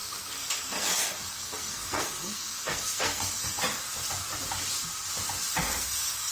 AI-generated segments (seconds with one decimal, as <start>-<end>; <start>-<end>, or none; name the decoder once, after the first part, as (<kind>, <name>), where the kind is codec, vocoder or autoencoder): 0.0-3.6 (codec, SNAC); 5.6-6.3